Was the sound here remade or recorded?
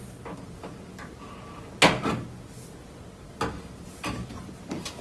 recorded